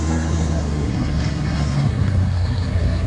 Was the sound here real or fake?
fake